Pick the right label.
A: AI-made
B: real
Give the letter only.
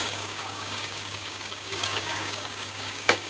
A